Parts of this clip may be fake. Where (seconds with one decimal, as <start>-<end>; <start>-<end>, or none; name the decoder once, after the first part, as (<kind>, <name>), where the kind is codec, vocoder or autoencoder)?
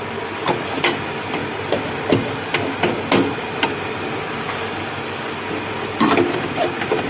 none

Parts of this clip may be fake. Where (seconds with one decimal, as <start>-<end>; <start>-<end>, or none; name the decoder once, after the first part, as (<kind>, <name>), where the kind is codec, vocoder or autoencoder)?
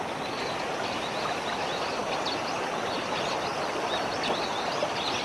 none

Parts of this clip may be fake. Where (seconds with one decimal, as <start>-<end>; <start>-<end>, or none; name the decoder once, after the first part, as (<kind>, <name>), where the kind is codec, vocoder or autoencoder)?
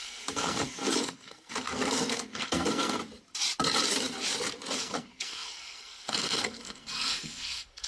0.0-3.0 (codec, SNAC); 4.8-7.9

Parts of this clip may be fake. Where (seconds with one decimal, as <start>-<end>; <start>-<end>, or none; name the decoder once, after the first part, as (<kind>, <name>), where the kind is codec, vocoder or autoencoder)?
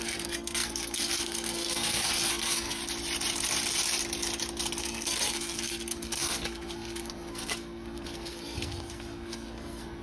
0.0-2.8 (codec, SNAC); 4.8-10.0